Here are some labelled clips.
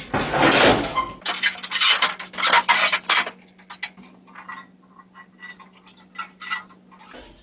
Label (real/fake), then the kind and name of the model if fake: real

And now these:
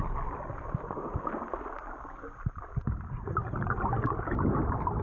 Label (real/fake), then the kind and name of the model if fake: real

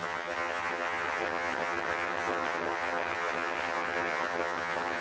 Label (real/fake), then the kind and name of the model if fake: fake, vocoder, HiFi-GAN